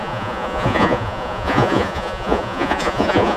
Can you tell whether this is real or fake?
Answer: fake